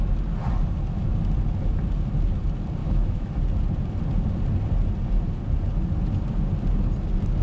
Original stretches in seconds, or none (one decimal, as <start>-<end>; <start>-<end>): 0.0-2.8; 3.3-7.4